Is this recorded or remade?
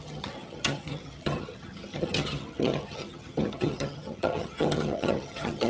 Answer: remade